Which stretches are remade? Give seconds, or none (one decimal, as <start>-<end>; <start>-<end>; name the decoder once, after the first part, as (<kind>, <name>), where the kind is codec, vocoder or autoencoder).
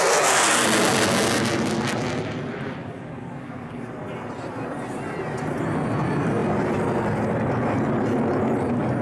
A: 2.8-3.9 (codec, DAC)